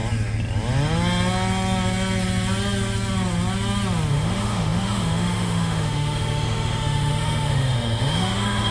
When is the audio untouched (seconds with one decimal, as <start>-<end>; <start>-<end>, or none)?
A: 0.0-4.1

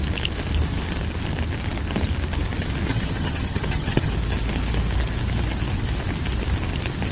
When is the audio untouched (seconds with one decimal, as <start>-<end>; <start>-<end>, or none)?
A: 0.0-2.9; 4.1-7.1

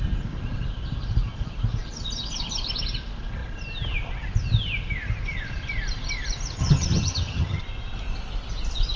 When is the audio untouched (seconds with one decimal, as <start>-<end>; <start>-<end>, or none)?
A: 0.0-6.6; 7.6-9.0

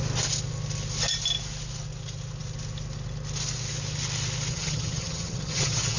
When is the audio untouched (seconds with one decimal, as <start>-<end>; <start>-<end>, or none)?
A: 0.0-4.5